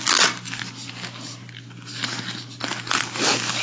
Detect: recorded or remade recorded